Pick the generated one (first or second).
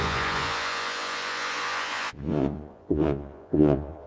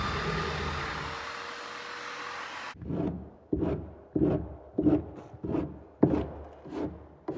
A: first